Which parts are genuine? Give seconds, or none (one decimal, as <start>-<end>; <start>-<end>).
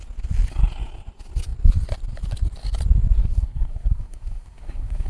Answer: 0.0-3.2